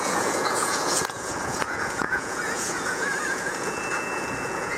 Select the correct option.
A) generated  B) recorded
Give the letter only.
A